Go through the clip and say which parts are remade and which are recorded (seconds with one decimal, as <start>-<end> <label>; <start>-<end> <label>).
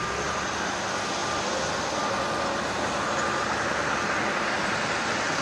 0.0-5.4 recorded